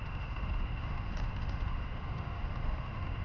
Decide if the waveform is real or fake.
fake